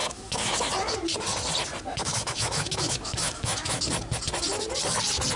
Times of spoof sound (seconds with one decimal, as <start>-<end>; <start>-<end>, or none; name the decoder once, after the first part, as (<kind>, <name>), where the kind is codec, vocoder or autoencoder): 0.0-0.7 (autoencoder, DAC-VAE); 1.9-3.8